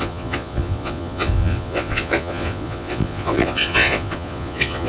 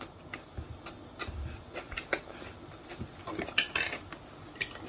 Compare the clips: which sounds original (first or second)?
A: second